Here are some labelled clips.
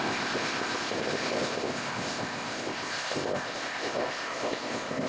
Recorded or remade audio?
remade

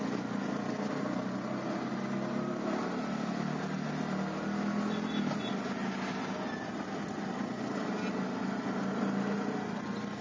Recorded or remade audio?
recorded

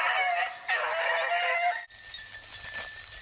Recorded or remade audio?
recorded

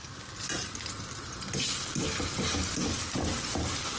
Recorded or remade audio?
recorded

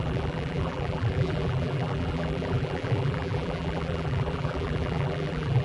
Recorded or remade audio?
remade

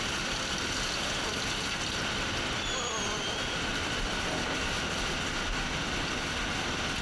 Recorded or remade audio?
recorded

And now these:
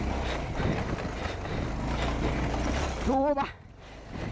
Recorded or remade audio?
recorded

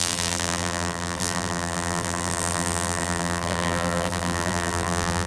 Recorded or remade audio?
remade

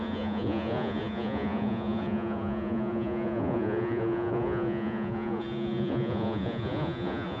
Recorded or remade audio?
remade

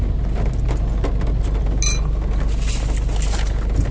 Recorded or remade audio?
recorded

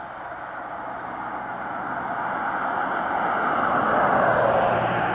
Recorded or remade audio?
recorded